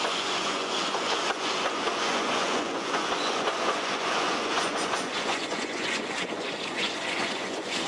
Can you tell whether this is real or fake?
fake